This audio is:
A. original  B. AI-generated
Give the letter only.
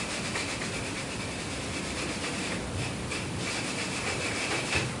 B